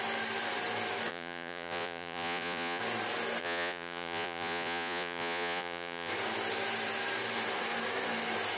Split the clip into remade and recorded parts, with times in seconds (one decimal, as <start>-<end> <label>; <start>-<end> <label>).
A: 0.0-1.1 recorded; 1.1-2.8 remade; 2.8-3.4 recorded; 3.4-6.1 remade; 6.1-8.6 recorded